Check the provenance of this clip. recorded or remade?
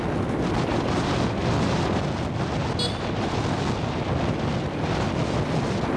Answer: recorded